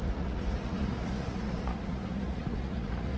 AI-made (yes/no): yes